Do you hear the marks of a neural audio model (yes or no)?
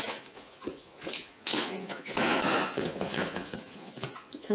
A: yes